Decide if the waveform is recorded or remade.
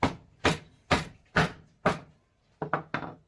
recorded